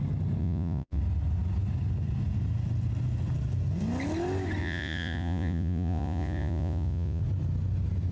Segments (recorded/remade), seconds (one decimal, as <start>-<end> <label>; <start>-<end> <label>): 0.0-0.4 recorded; 0.4-1.0 remade; 1.0-4.6 recorded; 4.6-7.2 remade; 7.2-8.1 recorded